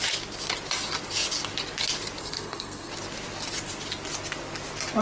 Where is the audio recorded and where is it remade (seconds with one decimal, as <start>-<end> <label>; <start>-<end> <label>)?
0.0-2.2 recorded; 2.2-2.9 remade; 2.9-5.0 recorded